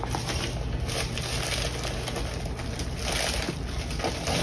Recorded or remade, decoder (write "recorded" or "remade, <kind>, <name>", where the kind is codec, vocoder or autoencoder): recorded